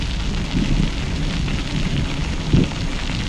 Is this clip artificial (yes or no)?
no